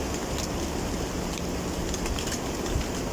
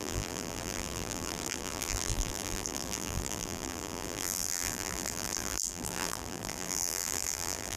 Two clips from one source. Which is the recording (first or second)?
first